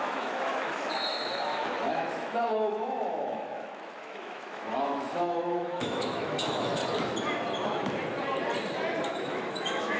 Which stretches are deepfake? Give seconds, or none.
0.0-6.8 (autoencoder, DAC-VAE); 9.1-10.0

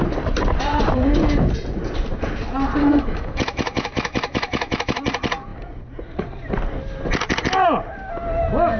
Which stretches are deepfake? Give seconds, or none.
2.8-5.0 (autoencoder, DAC-VAE)

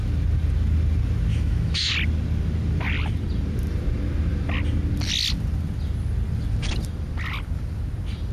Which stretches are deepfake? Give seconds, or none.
1.3-1.9 (autoencoder, DAC-VAE)

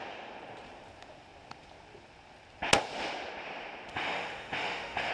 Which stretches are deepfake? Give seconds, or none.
3.9-5.1 (autoencoder, DAC-VAE)

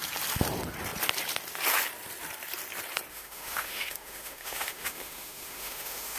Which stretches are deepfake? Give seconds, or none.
3.1-6.2 (autoencoder, DAC-VAE)

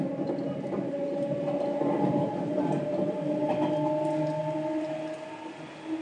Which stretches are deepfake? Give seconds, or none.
none